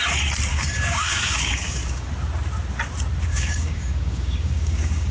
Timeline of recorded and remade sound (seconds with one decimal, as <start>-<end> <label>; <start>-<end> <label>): 0.0-0.5 recorded; 0.5-2.1 remade; 2.1-3.3 recorded; 3.3-5.1 remade